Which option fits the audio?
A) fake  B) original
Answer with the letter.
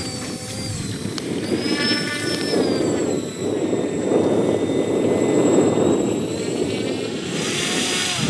A